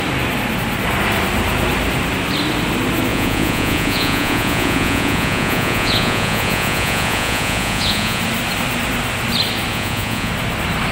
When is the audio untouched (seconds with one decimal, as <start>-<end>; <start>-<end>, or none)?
0.0-3.1; 8.2-9.7; 10.3-10.9